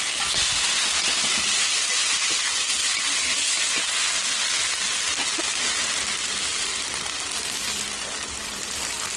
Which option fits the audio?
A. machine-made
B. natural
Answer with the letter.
B